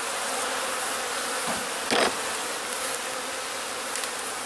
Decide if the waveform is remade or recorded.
recorded